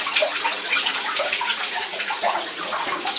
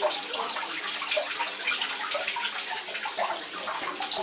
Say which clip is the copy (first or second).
first